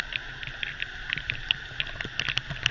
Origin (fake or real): real